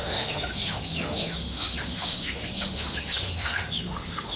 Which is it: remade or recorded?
remade